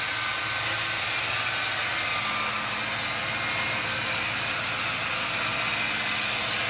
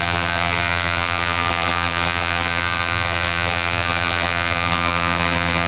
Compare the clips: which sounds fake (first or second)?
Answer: second